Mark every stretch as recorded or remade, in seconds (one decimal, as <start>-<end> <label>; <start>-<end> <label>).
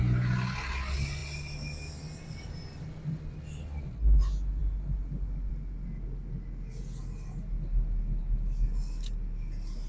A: 0.0-9.9 recorded